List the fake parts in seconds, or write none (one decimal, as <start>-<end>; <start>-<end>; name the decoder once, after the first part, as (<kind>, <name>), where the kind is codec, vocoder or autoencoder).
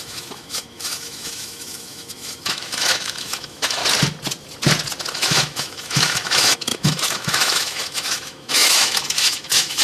0.0-3.8 (autoencoder, DAC-VAE); 5.1-9.8